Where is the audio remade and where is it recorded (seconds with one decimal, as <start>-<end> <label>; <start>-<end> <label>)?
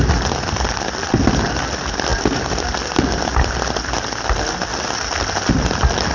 0.0-6.1 recorded